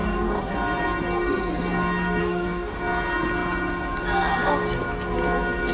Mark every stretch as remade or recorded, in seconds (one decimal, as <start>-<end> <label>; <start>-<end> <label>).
0.0-0.5 remade; 0.5-2.2 recorded; 2.2-2.8 remade; 2.8-5.7 recorded